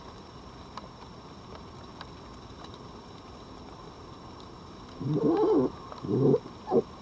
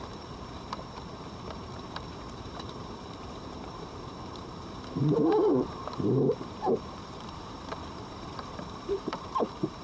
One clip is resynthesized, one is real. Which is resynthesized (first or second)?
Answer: second